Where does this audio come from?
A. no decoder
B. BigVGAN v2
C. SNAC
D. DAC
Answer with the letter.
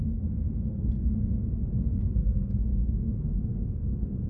C